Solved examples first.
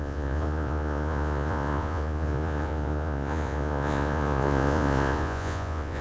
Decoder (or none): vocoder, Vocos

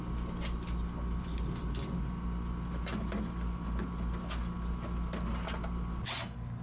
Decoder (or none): none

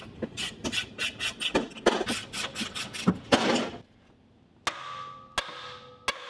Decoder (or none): none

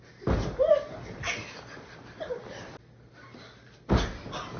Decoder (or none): none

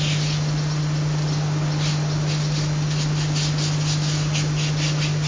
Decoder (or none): none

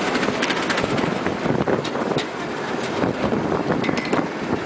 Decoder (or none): vocoder, BigVGAN v2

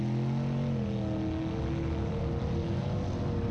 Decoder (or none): none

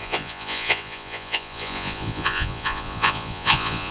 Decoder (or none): vocoder, Vocos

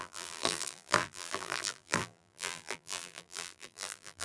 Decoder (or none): vocoder, BigVGAN v2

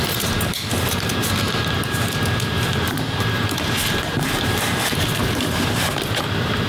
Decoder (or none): vocoder, BigVGAN v2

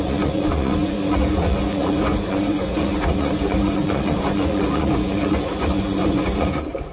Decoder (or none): vocoder, Vocos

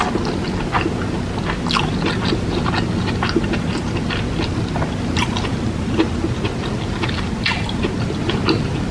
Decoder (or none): none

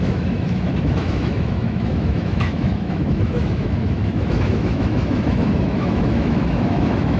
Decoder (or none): autoencoder, DAC-VAE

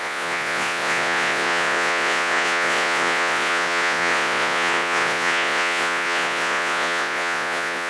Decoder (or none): vocoder, Vocos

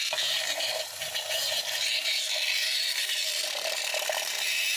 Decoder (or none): vocoder, BigVGAN v2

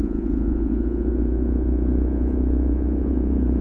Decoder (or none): vocoder, Vocos